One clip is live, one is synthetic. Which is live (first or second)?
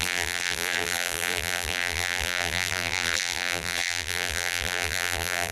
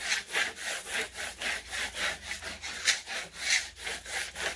second